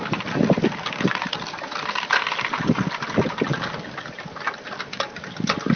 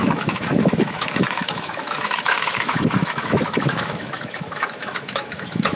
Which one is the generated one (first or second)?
second